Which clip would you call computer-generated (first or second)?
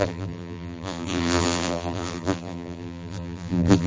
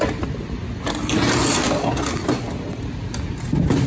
first